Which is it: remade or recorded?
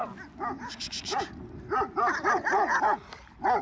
recorded